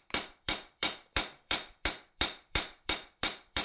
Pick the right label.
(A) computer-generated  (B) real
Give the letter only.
A